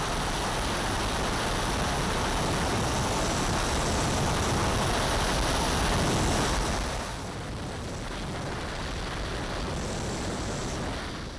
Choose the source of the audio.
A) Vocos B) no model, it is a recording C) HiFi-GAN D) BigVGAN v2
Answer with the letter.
B